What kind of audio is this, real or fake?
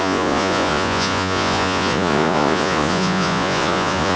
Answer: fake